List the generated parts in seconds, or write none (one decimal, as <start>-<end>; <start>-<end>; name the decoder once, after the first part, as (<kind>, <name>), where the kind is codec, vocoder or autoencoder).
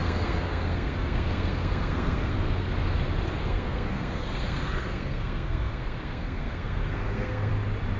0.0-2.7 (codec, SNAC); 3.4-7.5